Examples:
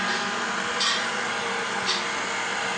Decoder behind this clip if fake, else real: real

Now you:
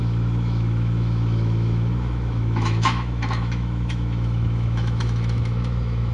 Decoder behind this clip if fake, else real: fake, autoencoder, DAC-VAE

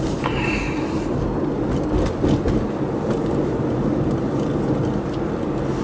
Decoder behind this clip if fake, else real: real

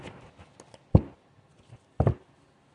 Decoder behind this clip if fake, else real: real